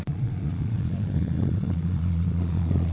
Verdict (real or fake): fake